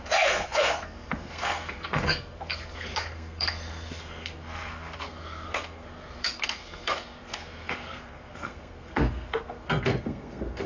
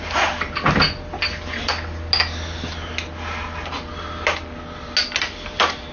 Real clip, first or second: second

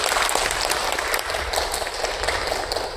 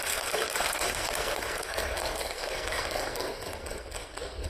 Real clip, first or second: first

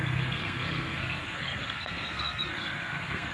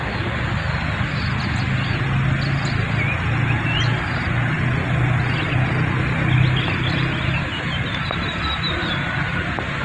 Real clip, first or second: second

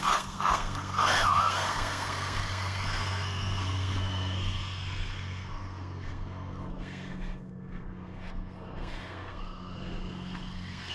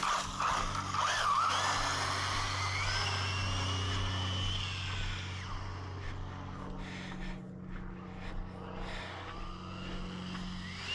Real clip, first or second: second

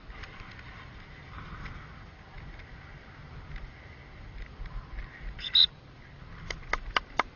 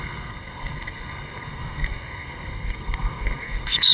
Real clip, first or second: first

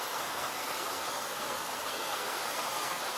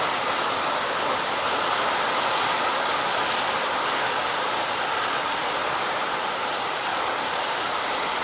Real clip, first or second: second